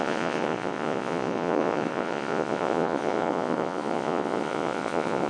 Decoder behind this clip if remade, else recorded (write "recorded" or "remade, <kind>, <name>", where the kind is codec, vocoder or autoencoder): remade, vocoder, Vocos